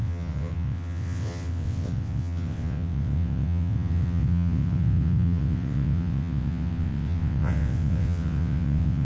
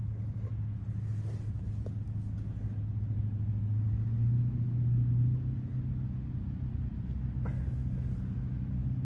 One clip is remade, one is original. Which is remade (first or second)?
first